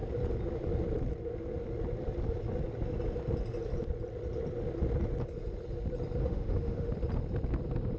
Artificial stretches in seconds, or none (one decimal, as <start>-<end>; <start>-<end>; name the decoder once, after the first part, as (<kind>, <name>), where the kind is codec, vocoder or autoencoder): 6.2-6.9 (autoencoder, DAC-VAE)